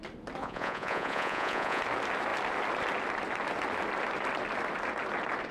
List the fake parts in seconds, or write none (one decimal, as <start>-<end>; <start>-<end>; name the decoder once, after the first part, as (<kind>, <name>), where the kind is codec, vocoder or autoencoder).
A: 0.4-1.8 (vocoder, Vocos)